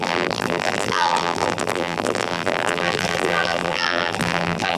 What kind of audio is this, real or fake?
fake